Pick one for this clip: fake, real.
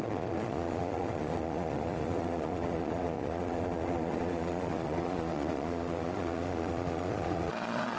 fake